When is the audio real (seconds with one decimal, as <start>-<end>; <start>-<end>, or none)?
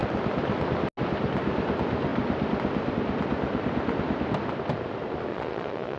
0.0-5.3